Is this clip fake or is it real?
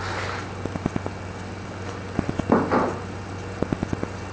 real